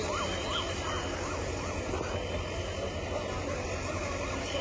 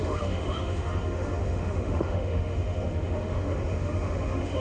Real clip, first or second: first